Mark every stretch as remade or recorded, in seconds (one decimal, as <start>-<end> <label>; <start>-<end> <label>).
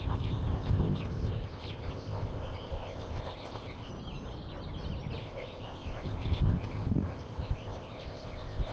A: 0.0-3.9 remade; 3.9-5.2 recorded; 5.2-8.7 remade